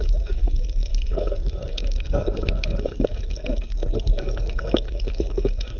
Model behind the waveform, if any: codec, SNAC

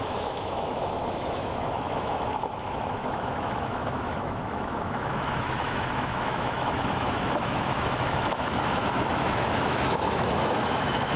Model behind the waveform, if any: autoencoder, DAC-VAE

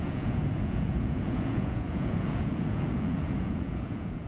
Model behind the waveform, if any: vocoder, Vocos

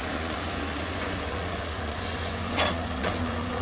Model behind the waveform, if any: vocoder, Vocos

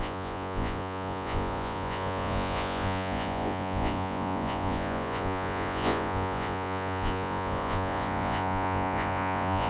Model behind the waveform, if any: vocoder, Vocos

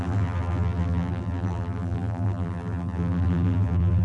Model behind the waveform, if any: vocoder, BigVGAN v2